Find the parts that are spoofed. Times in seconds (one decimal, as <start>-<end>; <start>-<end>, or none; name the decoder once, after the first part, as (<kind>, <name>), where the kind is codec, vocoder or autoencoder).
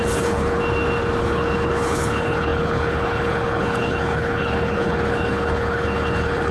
0.0-0.6 (codec, HILCodec); 1.2-6.5